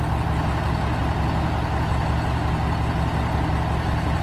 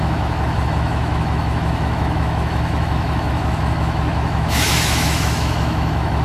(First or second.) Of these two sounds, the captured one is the first